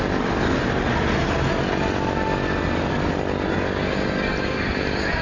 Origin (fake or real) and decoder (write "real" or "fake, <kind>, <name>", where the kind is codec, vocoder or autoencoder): real